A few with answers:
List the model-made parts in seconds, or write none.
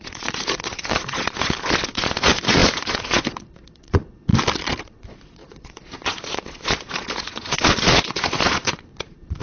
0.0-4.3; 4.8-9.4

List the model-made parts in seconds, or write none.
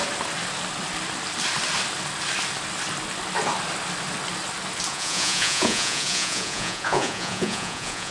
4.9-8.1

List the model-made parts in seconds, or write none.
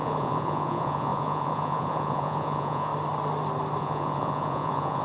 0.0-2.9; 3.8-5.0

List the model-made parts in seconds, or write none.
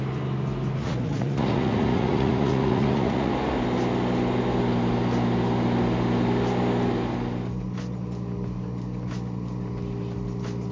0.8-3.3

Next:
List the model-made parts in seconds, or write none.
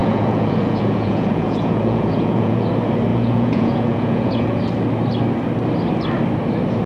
0.0-2.7; 3.1-4.6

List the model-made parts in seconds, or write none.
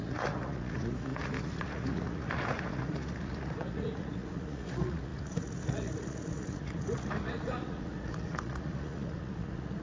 0.0-9.8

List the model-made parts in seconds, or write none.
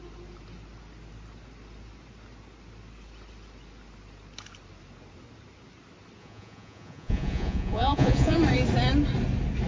6.2-8.4